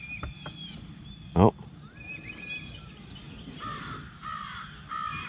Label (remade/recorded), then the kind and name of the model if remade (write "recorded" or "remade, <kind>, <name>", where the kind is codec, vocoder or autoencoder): recorded